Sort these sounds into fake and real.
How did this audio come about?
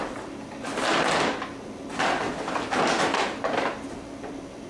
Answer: real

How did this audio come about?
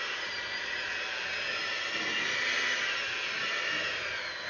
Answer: real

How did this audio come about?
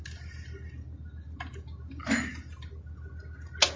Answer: real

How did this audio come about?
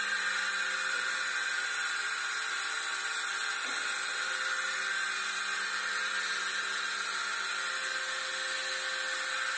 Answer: real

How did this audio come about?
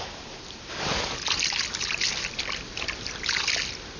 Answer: real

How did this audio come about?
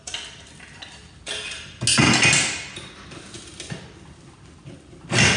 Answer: real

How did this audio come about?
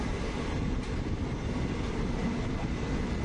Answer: real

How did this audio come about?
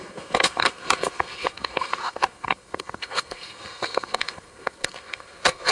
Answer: fake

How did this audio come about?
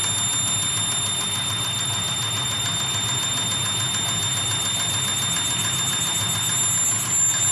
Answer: real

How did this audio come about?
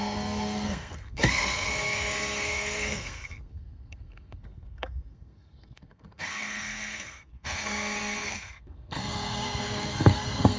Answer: fake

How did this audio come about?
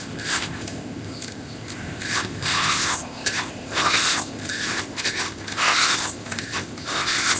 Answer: fake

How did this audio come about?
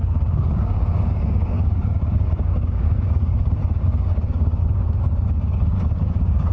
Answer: fake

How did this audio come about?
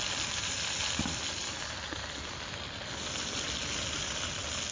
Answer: real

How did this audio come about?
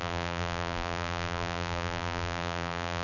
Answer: fake